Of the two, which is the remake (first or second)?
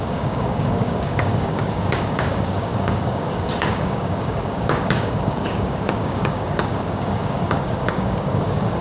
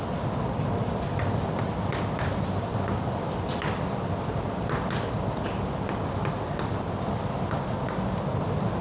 first